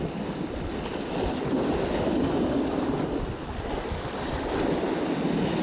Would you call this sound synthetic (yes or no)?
no